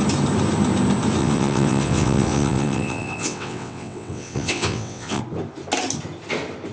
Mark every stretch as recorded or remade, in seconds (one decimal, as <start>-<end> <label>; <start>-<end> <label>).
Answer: 0.0-1.2 recorded; 1.2-5.2 remade; 5.2-6.7 recorded